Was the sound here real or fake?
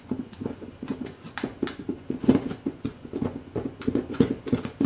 fake